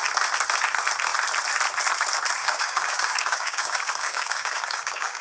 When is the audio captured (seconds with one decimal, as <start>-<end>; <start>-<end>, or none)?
0.0-2.4